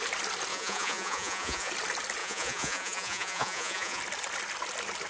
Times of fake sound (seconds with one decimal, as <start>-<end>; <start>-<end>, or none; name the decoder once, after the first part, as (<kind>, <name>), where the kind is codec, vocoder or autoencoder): 0.5-1.7 (vocoder, Vocos); 2.2-4.0